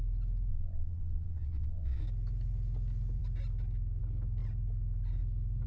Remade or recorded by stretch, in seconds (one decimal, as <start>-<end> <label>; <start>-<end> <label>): 0.0-0.5 recorded; 0.5-2.0 remade; 2.0-5.7 recorded